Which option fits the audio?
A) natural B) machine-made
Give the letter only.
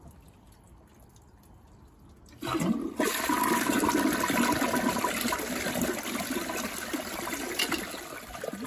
A